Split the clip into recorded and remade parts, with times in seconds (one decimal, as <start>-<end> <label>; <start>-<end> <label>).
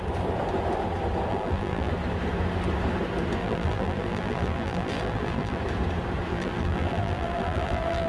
0.0-1.3 recorded; 1.3-1.9 remade; 1.9-3.4 recorded; 3.4-5.6 remade; 5.6-6.3 recorded; 6.3-8.1 remade